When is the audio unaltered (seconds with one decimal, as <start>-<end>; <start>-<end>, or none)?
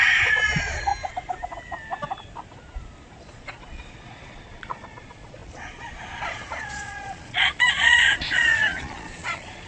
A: 0.9-3.3